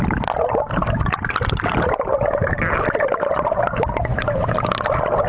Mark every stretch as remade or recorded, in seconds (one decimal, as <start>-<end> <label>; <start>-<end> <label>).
0.0-5.3 recorded